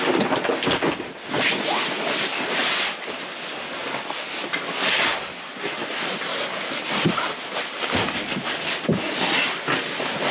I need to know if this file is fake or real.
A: real